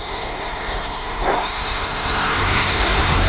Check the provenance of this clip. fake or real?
fake